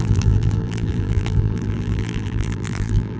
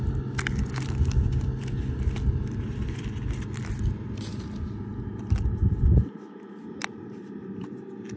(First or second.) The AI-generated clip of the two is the first